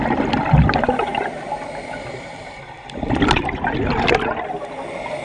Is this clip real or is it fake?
real